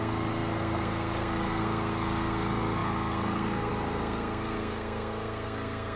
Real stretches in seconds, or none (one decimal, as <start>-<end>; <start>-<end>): none